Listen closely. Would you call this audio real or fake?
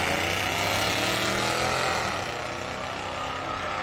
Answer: real